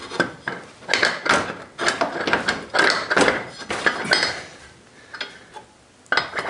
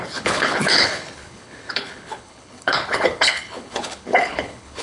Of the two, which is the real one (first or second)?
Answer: first